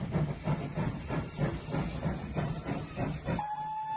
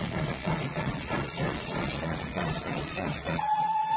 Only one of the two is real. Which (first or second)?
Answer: first